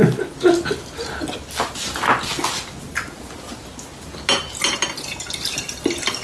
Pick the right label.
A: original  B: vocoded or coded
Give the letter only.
A